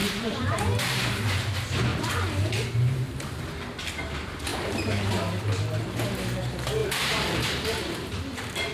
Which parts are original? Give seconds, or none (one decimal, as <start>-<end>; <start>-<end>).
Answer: 1.1-1.9; 3.4-4.5; 5.1-6.8; 8.1-8.7